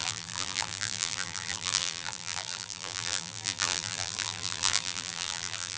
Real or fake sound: fake